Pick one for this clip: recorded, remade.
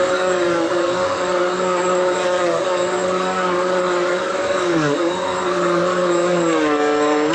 remade